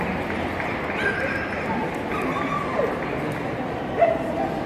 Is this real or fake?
real